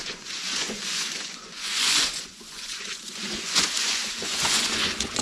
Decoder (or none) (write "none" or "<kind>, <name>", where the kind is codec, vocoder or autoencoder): vocoder, Vocos